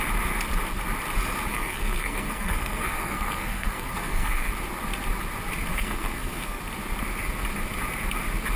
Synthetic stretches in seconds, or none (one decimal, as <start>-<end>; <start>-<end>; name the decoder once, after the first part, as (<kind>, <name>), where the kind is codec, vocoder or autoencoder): 1.5-4.5 (codec, SNAC); 5.7-6.6